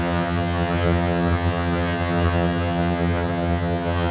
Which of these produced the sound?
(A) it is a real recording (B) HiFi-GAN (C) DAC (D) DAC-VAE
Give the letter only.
B